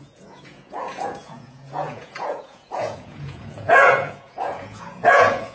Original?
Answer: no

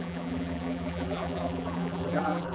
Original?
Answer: no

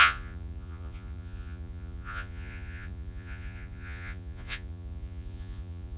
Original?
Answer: no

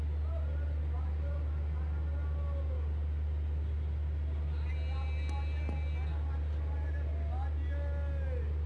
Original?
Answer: yes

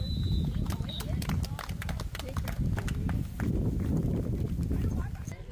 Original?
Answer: no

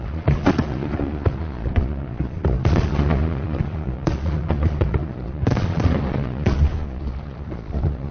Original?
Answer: no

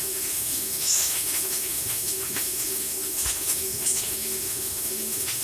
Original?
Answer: no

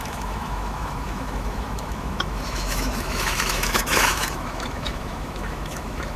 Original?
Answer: no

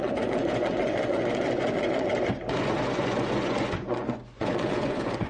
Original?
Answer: no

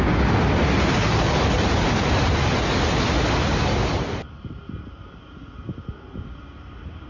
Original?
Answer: yes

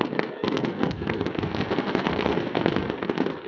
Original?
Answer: no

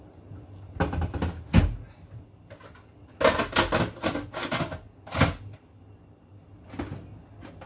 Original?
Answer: yes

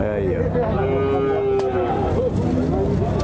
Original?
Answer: yes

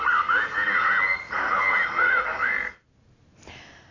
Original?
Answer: yes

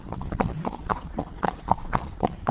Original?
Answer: no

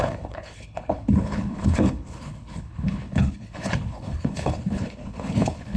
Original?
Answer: no